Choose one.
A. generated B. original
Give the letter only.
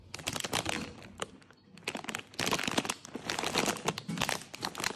B